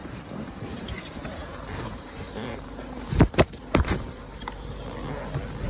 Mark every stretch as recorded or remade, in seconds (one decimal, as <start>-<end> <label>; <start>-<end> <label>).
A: 0.0-0.8 remade; 0.8-1.4 recorded; 1.4-4.8 remade; 4.8-5.7 recorded

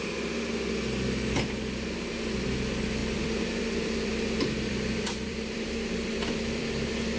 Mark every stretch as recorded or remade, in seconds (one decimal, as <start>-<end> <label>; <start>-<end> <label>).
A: 0.0-3.0 recorded; 3.0-7.2 remade

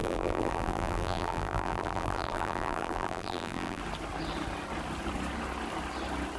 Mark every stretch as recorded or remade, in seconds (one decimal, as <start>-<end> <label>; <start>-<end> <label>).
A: 0.0-3.8 remade; 3.8-6.4 recorded

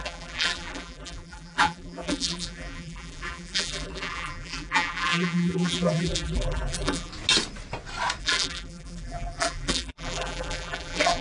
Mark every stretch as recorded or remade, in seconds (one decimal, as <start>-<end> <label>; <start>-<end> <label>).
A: 0.0-7.1 remade; 7.1-8.2 recorded; 8.2-11.2 remade